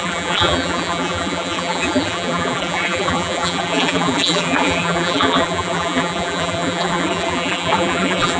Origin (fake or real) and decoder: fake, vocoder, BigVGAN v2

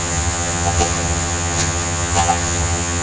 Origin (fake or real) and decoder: fake, vocoder, HiFi-GAN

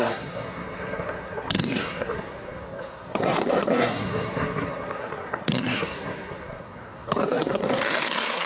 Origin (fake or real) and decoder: fake, codec, SNAC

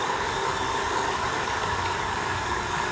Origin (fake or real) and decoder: fake, codec, DAC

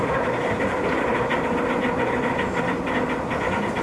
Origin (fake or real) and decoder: real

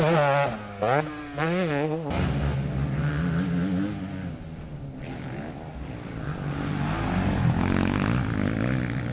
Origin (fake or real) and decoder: real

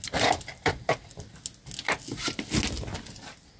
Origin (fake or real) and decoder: real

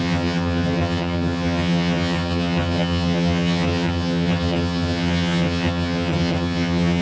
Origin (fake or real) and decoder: fake, vocoder, HiFi-GAN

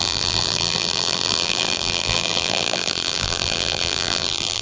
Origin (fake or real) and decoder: fake, vocoder, BigVGAN v2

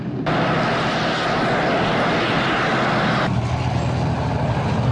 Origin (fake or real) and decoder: real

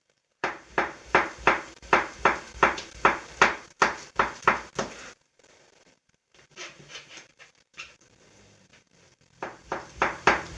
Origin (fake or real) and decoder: fake, vocoder, BigVGAN v2